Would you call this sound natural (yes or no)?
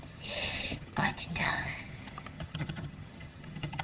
no